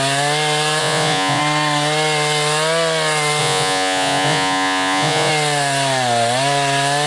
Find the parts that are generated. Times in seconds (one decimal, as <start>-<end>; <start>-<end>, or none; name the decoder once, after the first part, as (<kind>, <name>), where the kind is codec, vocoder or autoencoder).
0.8-1.4 (vocoder, Vocos); 3.4-5.3